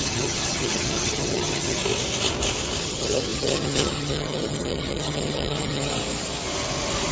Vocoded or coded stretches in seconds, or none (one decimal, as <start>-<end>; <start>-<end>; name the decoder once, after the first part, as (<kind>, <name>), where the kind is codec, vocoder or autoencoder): 0.0-1.8 (vocoder, HiFi-GAN); 2.8-5.9